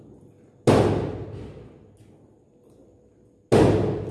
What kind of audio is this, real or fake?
real